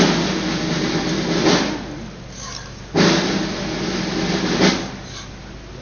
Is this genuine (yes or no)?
yes